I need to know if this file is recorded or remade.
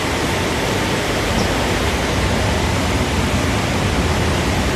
recorded